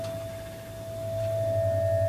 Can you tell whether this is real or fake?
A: real